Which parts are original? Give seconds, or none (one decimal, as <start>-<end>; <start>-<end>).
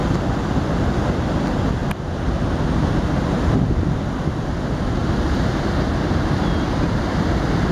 0.0-7.7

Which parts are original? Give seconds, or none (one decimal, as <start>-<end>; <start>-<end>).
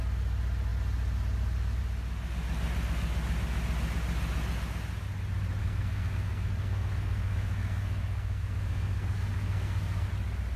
0.0-5.6; 10.1-10.6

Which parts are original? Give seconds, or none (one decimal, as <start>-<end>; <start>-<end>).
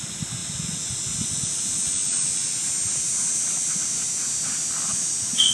0.0-5.5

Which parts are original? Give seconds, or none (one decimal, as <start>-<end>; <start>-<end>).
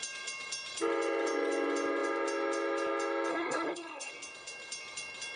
0.0-3.3; 4.1-5.4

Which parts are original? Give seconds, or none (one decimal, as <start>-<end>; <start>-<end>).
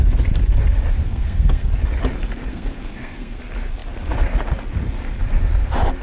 0.0-1.0; 1.7-2.5; 3.4-6.0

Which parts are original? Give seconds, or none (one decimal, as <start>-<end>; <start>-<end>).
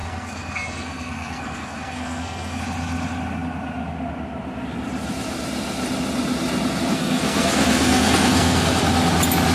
2.6-6.9; 8.8-9.5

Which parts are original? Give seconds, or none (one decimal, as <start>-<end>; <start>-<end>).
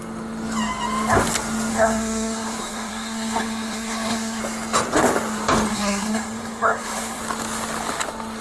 0.0-1.7; 4.4-5.7; 7.2-8.4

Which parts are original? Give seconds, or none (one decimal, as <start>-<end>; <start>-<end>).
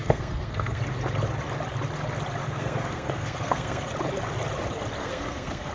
0.8-2.4; 3.9-5.0